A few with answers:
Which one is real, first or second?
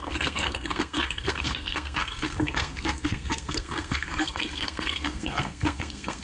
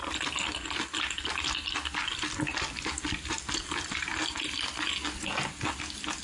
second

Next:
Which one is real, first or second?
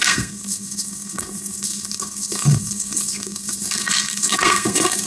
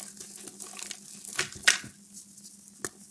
second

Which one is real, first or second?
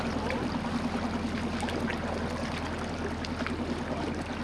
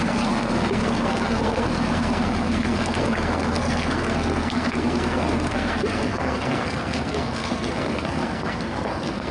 first